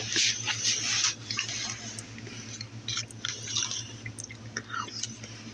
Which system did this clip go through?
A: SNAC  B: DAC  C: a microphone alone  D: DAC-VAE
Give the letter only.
C